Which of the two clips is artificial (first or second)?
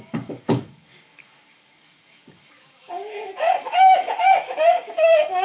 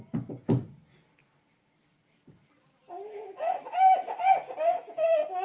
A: first